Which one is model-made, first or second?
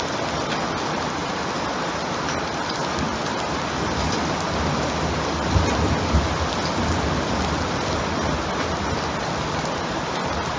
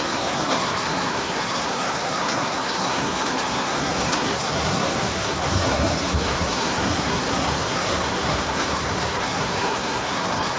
second